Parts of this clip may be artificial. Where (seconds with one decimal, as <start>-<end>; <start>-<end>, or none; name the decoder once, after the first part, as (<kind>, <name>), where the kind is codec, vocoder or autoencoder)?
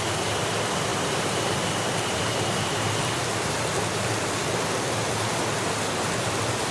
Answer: none